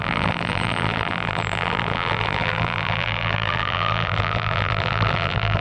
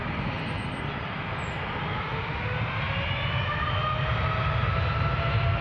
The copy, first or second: first